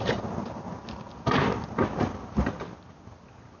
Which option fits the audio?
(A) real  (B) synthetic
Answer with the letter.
A